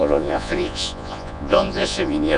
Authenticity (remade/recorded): remade